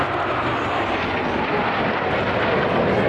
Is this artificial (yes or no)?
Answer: no